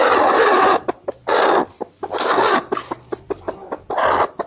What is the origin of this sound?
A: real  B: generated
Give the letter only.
A